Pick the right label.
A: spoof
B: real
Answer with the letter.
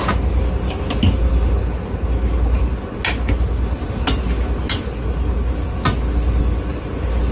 B